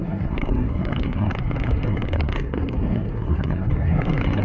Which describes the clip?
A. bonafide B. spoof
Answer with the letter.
B